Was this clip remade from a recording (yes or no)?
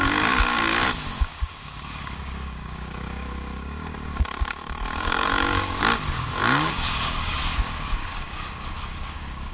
yes